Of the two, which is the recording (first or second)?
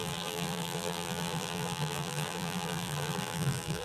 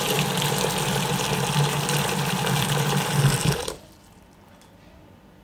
second